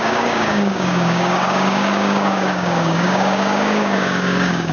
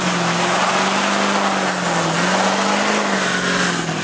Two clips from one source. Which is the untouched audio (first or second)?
second